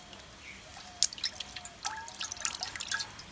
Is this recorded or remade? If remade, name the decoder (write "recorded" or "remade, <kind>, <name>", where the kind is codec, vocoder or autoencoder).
recorded